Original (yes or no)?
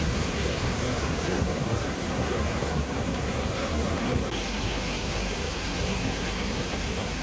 no